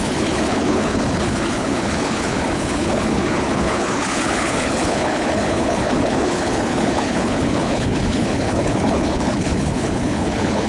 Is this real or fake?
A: fake